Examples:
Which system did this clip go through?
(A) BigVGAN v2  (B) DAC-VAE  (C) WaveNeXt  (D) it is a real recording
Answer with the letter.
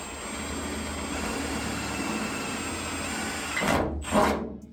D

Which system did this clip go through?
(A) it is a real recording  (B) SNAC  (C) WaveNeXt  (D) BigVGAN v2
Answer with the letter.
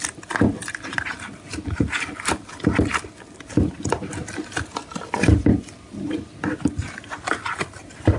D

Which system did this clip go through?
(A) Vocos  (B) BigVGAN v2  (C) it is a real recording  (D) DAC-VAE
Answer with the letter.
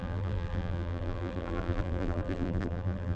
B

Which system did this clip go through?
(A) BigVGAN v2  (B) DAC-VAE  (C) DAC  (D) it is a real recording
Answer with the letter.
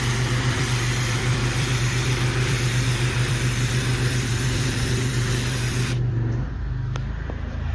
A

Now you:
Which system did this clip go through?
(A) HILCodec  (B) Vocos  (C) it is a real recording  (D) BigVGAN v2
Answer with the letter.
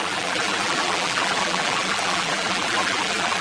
D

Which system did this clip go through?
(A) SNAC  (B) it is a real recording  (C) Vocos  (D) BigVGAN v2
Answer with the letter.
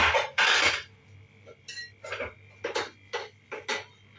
B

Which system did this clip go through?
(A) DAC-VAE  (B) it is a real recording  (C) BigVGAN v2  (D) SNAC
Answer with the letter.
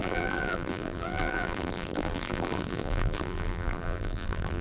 C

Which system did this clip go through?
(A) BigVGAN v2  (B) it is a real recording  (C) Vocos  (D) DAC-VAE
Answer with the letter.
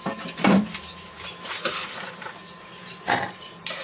A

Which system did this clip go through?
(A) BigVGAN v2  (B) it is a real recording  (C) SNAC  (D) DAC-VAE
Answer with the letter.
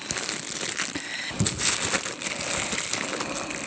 B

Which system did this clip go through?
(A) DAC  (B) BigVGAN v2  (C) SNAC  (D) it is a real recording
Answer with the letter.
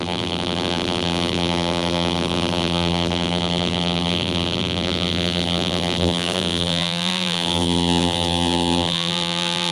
B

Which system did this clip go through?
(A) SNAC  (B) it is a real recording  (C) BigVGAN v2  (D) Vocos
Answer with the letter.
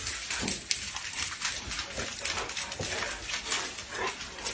B